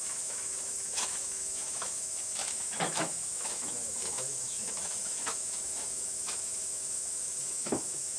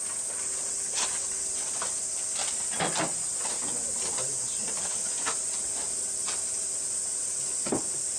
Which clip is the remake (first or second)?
first